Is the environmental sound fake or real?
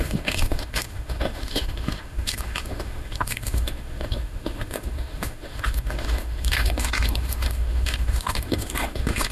fake